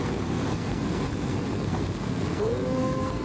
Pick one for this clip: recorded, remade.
remade